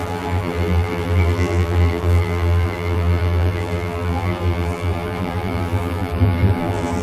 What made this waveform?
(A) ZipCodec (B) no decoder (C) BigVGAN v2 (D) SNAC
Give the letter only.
C